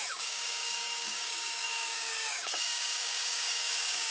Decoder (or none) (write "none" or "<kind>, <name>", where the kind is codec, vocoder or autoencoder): codec, DAC